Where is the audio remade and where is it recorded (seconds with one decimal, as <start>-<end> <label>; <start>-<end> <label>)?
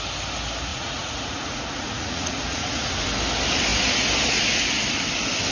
0.0-0.7 recorded; 0.7-2.9 remade; 2.9-5.5 recorded